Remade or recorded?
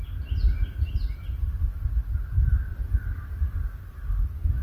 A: recorded